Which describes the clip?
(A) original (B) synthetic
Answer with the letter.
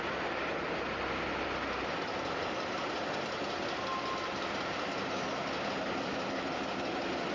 A